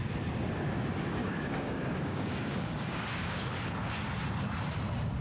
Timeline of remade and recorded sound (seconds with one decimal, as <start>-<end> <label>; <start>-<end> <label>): 0.0-1.2 recorded; 1.2-3.5 remade; 3.5-5.2 recorded